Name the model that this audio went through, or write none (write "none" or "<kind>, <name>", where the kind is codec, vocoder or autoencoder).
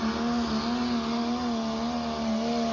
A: none